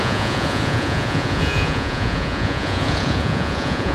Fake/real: fake